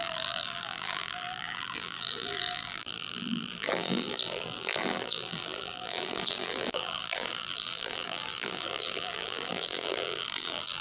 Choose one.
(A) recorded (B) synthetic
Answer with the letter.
B